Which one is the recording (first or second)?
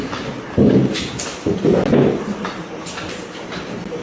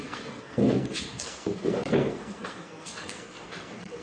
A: first